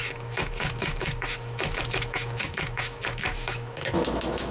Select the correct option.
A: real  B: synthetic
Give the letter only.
B